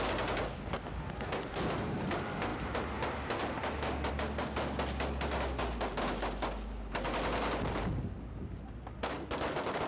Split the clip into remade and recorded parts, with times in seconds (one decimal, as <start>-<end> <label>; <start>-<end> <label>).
0.0-9.9 recorded